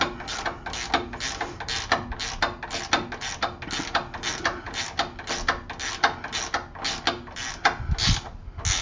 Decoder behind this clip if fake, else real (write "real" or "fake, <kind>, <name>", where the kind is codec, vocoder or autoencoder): real